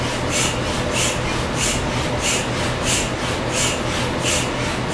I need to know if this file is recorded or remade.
recorded